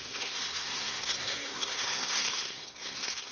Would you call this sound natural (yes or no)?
no